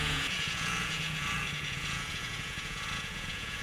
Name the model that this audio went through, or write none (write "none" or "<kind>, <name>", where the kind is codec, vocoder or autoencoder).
vocoder, Vocos